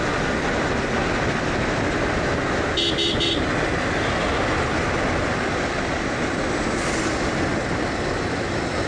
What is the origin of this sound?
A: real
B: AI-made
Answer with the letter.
A